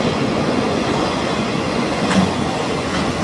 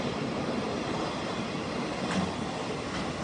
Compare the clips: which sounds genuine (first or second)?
second